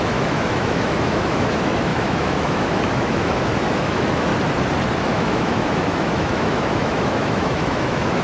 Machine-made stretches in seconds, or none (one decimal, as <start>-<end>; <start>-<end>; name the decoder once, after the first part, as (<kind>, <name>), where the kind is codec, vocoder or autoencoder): 0.0-4.3 (autoencoder, DAC-VAE); 5.0-8.2